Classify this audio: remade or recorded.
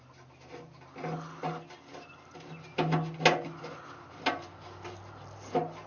recorded